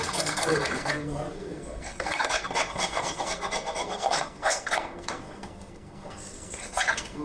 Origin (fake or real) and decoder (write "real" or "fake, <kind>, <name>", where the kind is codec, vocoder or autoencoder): fake, codec, SNAC